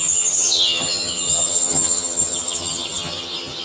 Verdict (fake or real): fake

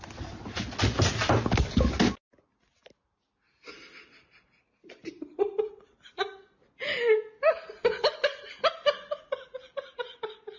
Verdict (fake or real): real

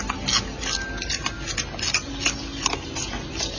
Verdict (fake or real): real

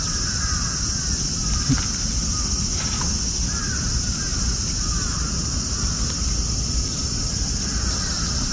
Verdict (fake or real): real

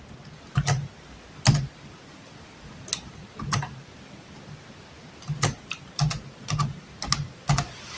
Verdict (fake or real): real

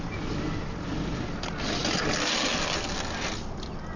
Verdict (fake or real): real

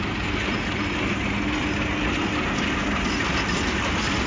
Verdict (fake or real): real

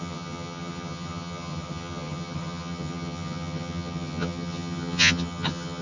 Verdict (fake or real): fake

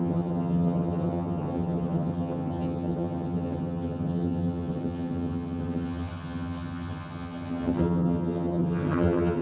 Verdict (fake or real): fake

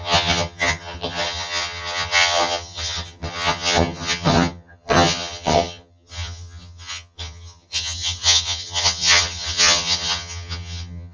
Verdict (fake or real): fake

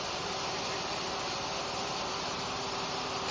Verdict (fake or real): real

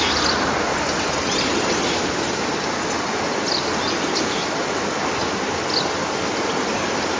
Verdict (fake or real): real